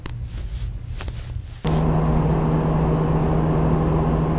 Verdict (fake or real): real